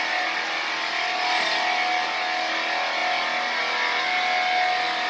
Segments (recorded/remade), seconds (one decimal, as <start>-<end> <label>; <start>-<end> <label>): 0.0-5.1 recorded

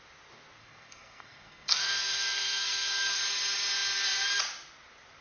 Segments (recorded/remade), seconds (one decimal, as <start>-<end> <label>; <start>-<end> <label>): 0.0-0.6 recorded; 0.6-3.2 remade; 3.2-5.2 recorded

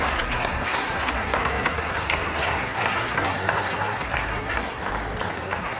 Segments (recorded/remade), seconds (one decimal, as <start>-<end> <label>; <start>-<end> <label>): 0.0-4.8 remade; 4.8-5.3 recorded; 5.3-5.8 remade

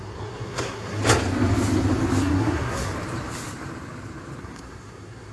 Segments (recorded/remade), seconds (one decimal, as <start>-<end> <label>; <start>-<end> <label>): 0.0-1.0 remade; 1.0-2.2 recorded; 2.2-2.9 remade; 2.9-4.4 recorded; 4.4-5.3 remade

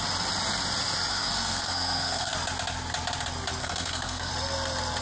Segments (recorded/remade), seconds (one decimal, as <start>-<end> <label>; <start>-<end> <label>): 0.0-1.1 recorded; 1.1-2.3 remade; 2.3-3.6 recorded; 3.6-4.3 remade; 4.3-5.0 recorded

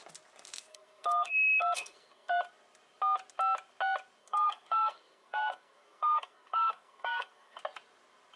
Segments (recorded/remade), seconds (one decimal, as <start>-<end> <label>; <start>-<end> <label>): 0.0-0.7 recorded; 0.7-2.4 remade; 2.4-4.2 recorded; 4.2-7.6 remade; 7.6-8.4 recorded

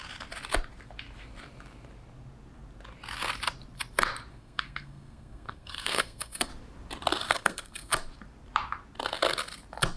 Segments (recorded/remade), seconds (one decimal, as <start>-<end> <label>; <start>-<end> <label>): 0.0-4.3 recorded; 4.3-6.5 remade; 6.5-7.3 recorded; 7.3-7.9 remade; 7.9-10.0 recorded